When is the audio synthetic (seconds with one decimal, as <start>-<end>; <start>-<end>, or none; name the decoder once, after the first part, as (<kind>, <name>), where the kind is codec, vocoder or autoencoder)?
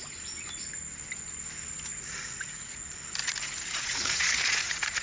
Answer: 1.9-2.8 (vocoder, Vocos); 3.2-5.0